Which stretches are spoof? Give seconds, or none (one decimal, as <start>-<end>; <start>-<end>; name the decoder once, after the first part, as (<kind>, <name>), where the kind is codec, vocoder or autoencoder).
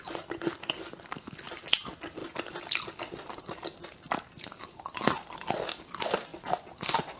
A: none